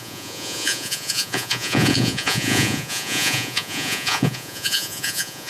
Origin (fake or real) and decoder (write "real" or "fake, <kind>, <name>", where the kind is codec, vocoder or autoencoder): fake, vocoder, Vocos